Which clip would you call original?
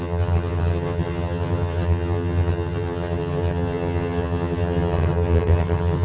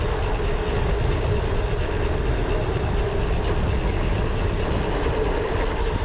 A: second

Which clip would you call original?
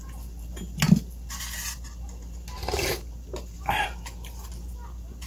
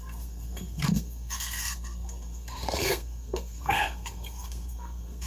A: first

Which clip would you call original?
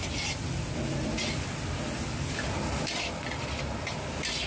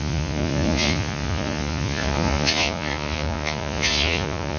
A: first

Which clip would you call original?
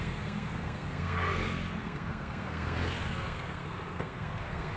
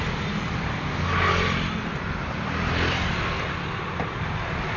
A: second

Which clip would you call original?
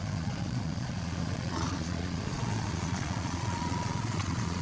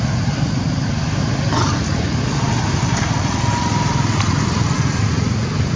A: second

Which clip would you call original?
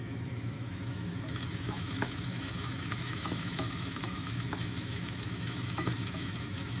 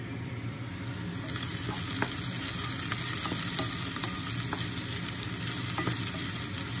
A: second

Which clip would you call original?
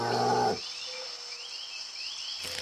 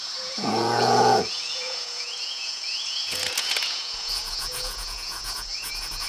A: first